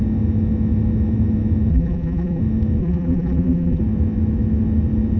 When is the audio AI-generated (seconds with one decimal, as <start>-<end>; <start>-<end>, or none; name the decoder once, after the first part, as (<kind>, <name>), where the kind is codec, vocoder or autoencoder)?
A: 1.7-2.4 (vocoder, BigVGAN v2); 2.8-3.8